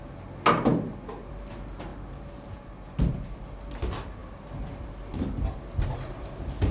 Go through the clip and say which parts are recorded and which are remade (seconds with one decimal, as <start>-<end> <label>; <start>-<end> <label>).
0.0-6.7 recorded